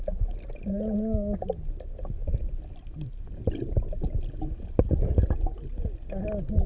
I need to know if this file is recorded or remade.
recorded